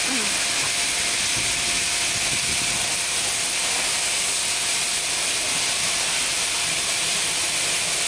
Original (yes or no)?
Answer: yes